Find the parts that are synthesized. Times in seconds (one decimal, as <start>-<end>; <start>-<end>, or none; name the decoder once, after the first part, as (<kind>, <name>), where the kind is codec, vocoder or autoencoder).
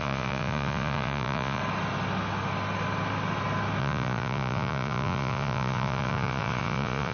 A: 0.0-1.6 (vocoder, Vocos); 3.8-7.1